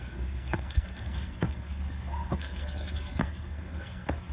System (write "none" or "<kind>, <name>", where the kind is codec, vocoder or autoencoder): codec, SNAC